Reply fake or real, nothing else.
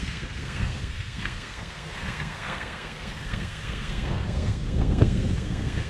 fake